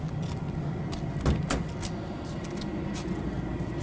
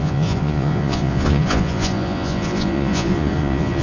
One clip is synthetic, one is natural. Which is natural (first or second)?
first